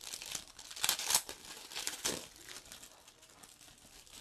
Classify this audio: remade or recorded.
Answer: recorded